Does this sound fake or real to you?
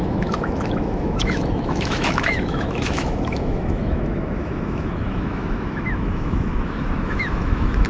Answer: fake